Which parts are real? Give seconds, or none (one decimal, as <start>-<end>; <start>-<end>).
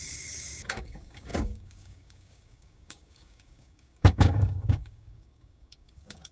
none